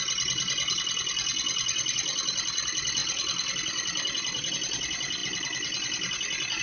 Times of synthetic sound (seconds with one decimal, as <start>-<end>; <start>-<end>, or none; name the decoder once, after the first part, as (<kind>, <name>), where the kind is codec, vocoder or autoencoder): none